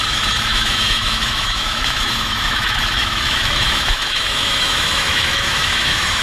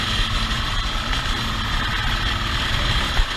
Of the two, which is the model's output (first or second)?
first